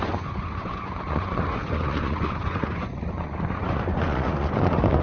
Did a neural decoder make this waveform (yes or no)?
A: yes